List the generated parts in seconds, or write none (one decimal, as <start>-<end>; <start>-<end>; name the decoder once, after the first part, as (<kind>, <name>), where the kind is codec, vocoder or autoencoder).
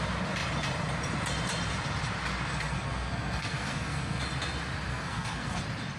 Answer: 2.5-4.2 (codec, SNAC); 4.9-5.6